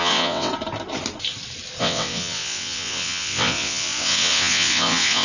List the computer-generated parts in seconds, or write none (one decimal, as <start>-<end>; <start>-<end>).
0.0-0.5; 1.8-5.2